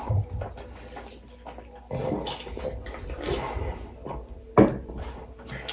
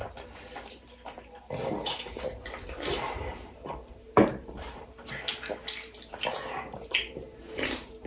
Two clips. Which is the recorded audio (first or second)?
first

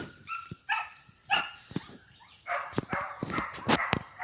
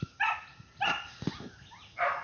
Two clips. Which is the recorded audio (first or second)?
second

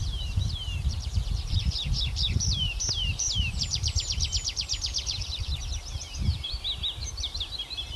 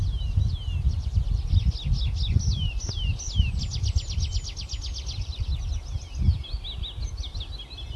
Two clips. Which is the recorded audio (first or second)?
second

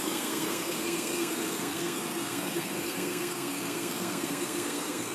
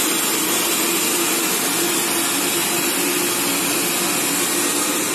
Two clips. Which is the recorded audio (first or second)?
second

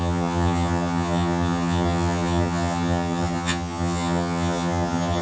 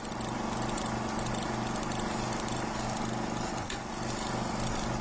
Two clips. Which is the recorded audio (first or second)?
second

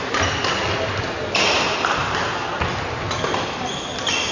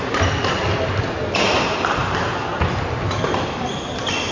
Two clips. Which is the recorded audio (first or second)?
first